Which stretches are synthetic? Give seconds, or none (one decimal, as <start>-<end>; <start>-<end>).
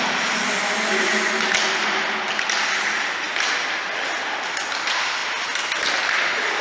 5.2-6.6